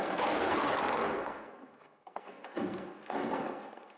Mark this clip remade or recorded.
remade